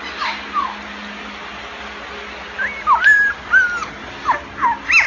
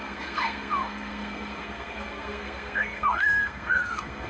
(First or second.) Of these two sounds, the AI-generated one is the second